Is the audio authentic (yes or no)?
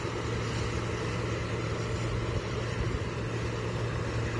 yes